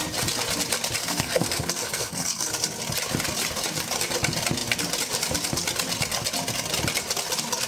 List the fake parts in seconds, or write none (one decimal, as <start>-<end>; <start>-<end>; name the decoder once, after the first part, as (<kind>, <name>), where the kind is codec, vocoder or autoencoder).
1.0-2.5 (codec, SNAC)

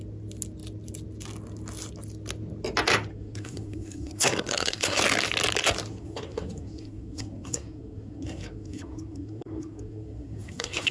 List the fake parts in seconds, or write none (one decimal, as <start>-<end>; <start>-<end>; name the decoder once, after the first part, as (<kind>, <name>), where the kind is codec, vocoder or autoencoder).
3.1-5.0 (codec, SNAC); 5.9-10.9

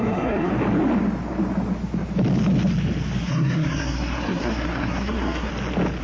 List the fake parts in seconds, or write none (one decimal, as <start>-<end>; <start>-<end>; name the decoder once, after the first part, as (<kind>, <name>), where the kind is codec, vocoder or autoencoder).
0.0-0.5 (codec, SNAC); 3.2-5.5

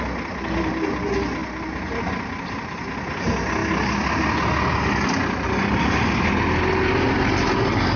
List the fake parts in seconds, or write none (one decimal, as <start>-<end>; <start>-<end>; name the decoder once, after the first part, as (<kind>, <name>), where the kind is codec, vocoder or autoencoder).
none

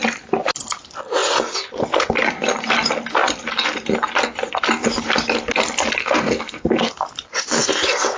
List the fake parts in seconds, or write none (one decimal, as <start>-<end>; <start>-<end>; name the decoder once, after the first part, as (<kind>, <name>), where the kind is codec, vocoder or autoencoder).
6.0-6.9 (codec, SNAC)